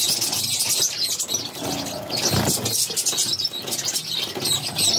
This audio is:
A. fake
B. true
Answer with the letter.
B